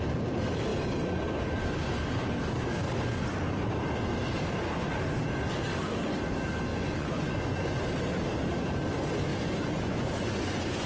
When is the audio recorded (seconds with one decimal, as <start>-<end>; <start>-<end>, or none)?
0.0-6.7; 7.8-9.3